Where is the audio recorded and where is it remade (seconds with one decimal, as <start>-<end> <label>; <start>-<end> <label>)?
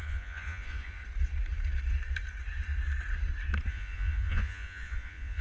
0.0-1.0 remade; 1.0-3.7 recorded; 3.7-5.4 remade